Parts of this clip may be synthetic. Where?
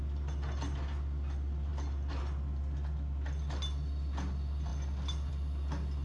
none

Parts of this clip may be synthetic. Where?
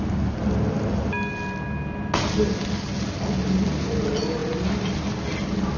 none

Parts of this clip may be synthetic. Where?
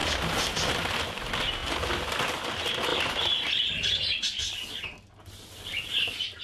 1.6-2.5 (vocoder, BigVGAN v2); 2.9-3.6